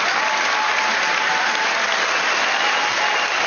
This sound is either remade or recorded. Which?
recorded